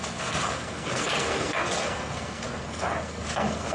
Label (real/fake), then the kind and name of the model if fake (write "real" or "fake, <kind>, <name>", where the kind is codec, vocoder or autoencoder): fake, codec, SNAC